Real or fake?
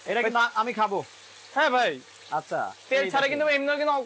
real